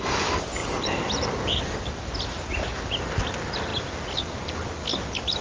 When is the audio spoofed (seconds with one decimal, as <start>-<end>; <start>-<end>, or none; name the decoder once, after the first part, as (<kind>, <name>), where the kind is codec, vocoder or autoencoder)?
none